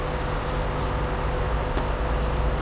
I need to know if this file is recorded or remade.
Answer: recorded